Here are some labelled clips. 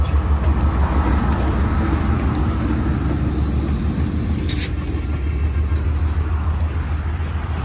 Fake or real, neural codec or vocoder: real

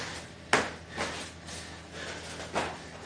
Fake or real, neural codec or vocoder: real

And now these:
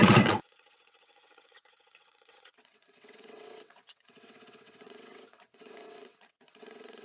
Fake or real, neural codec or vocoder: fake, vocoder, WaveNeXt